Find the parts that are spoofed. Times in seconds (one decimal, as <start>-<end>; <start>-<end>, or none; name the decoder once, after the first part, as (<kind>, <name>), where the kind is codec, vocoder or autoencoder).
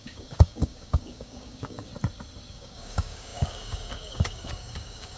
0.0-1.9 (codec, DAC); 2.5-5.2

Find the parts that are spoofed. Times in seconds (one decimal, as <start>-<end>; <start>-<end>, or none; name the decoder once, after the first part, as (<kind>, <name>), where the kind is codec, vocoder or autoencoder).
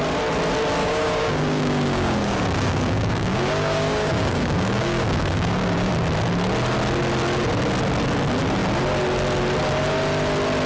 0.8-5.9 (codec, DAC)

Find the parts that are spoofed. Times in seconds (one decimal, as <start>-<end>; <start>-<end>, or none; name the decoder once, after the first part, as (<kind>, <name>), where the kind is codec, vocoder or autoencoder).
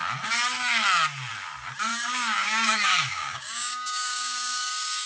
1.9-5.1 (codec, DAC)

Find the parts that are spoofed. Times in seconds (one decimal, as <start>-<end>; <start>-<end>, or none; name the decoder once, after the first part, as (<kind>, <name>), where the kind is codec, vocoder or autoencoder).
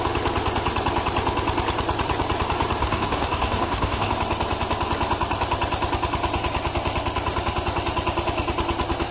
2.8-4.1 (codec, DAC)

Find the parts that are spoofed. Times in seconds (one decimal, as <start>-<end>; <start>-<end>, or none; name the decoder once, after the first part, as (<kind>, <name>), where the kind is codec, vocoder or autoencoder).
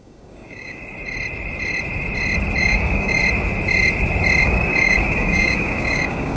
0.0-0.8 (codec, DAC); 2.6-3.2; 4.4-6.4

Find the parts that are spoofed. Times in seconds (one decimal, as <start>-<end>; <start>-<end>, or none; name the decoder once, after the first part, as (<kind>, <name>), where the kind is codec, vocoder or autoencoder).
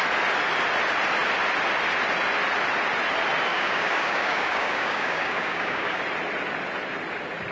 3.5-6.0 (codec, DAC)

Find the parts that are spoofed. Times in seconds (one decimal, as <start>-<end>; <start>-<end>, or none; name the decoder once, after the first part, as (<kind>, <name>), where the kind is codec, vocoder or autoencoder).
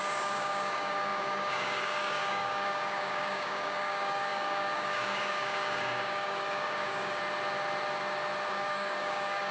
0.0-7.2 (codec, DAC); 8.5-9.5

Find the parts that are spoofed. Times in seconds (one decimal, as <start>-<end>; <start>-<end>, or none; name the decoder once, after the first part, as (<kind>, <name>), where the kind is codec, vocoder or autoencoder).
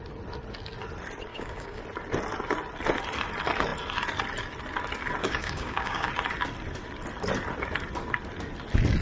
1.3-1.8 (codec, DAC); 5.2-6.1